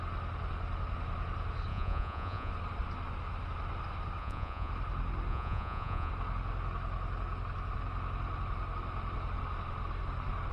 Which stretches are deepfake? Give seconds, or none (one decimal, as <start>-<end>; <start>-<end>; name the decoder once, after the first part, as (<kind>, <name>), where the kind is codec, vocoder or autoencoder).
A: 1.7-2.5 (vocoder, Vocos); 4.2-4.7; 5.3-6.1